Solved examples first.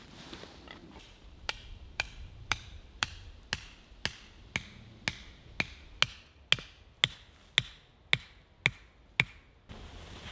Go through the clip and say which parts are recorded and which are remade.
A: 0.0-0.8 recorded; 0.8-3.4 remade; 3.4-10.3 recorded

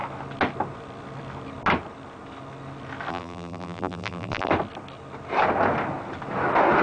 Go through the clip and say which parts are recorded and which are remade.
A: 0.0-3.1 recorded; 3.1-4.5 remade; 4.5-6.8 recorded

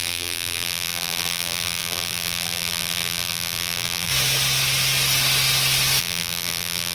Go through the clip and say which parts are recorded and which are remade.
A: 0.0-4.1 remade; 4.1-6.0 recorded; 6.0-6.9 remade

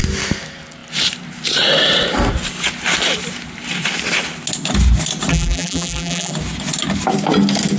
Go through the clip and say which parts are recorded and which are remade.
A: 0.0-5.3 recorded; 5.3-6.3 remade; 6.3-7.8 recorded

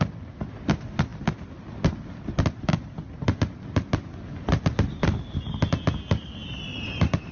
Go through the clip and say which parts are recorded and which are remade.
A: 0.0-6.7 recorded; 6.7-7.3 remade

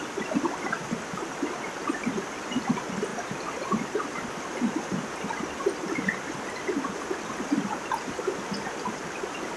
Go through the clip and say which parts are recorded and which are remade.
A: 0.0-9.6 recorded

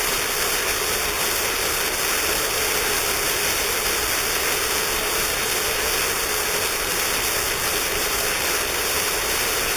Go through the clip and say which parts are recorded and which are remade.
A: 0.0-8.0 recorded; 8.0-9.8 remade